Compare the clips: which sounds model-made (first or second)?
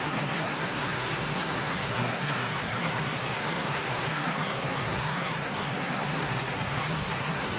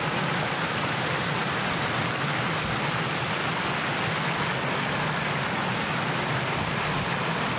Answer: first